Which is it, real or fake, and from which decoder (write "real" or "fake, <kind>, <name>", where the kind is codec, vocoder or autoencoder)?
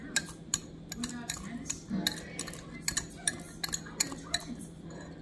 real